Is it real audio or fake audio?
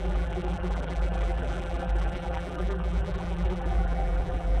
fake